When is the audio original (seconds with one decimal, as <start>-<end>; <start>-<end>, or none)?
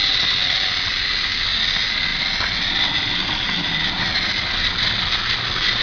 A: 0.0-5.8